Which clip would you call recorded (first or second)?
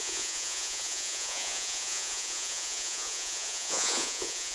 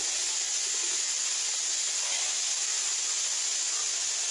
second